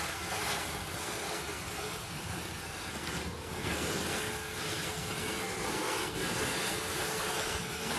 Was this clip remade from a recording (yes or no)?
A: yes